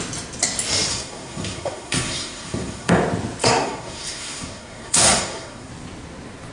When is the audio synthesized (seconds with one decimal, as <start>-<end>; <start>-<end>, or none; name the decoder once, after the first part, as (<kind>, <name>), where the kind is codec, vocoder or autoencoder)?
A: 0.9-2.9 (codec, SNAC); 3.4-5.7